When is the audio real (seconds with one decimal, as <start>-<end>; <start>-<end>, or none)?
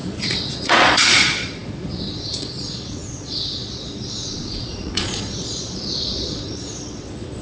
none